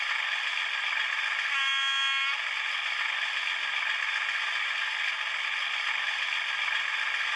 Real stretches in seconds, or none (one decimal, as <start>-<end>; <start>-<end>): 1.7-5.9